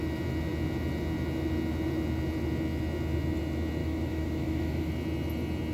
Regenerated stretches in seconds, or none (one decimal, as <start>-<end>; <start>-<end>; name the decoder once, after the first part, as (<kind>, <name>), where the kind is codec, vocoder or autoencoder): 3.8-4.9 (autoencoder, DAC-VAE)